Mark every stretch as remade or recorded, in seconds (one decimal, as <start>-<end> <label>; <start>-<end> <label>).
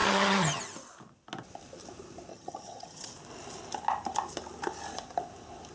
0.0-0.6 remade; 0.6-2.3 recorded; 2.3-3.1 remade; 3.1-5.7 recorded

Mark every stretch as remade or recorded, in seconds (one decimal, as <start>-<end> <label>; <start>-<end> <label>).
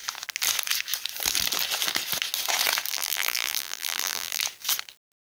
0.0-2.9 recorded; 2.9-4.4 remade; 4.4-5.3 recorded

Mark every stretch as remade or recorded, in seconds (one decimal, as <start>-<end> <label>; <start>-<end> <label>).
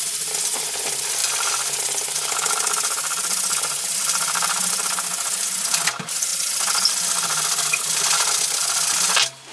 0.0-1.2 recorded; 1.2-4.7 remade; 4.7-6.3 recorded; 6.3-8.4 remade; 8.4-9.5 recorded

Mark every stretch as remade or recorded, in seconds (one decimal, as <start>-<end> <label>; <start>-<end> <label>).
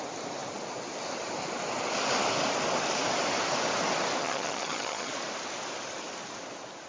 0.0-4.2 recorded; 4.2-5.1 remade; 5.1-6.9 recorded